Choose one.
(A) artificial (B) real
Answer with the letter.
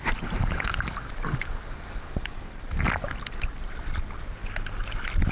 B